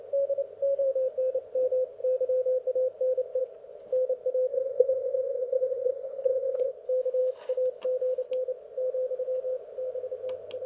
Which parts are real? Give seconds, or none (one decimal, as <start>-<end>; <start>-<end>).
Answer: 0.0-4.5; 6.7-10.7